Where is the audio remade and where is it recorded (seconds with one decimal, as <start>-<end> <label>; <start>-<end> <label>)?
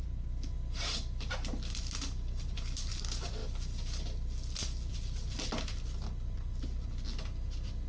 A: 0.0-7.9 recorded